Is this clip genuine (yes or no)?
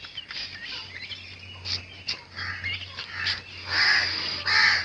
yes